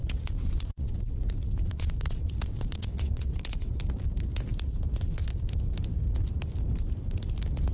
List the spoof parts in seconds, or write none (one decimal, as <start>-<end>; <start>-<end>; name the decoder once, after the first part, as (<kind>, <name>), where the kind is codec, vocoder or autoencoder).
0.0-3.8 (vocoder, WaveNeXt)